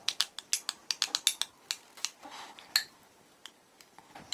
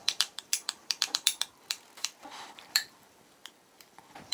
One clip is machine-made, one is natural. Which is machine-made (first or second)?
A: second